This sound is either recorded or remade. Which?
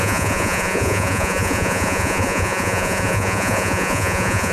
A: remade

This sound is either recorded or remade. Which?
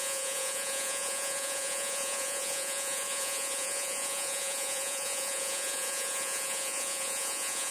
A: remade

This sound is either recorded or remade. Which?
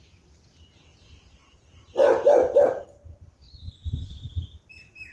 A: recorded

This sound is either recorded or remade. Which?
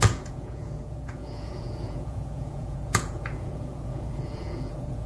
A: remade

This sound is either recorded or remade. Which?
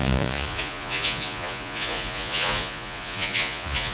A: remade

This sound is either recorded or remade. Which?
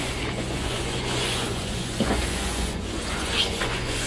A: remade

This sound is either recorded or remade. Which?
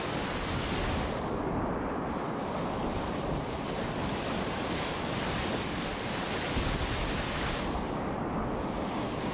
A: recorded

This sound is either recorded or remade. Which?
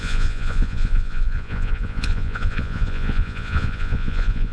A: remade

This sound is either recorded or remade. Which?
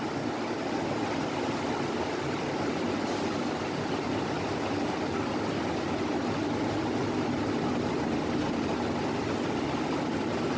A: recorded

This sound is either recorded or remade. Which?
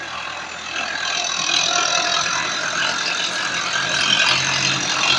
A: recorded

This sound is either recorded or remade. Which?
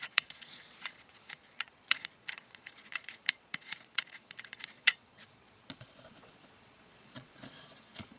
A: remade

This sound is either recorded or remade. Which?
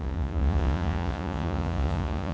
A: remade